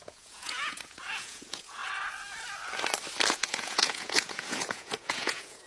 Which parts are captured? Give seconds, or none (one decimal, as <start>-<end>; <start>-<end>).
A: 1.8-3.3